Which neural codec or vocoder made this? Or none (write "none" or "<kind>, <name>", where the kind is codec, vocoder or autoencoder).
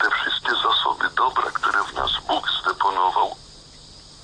none